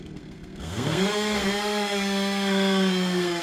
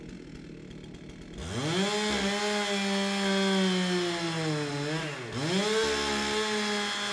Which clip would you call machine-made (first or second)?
first